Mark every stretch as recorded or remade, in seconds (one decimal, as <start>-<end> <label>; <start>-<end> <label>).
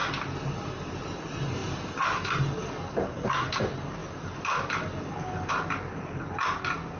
0.0-7.0 recorded